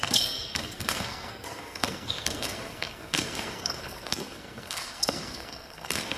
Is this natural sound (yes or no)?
no